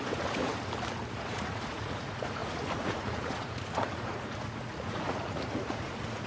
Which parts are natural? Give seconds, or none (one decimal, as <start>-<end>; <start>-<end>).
0.5-1.1